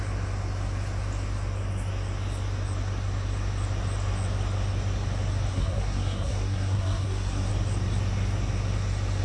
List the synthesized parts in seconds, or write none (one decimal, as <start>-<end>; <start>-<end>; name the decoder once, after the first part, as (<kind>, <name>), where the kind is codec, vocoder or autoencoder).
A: 5.5-7.5 (codec, SNAC)